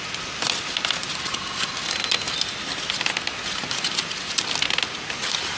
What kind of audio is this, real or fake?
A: real